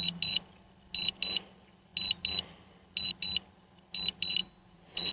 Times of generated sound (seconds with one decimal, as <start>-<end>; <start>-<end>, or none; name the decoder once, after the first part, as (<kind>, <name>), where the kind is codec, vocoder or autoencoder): 4.4-5.1 (vocoder, Vocos)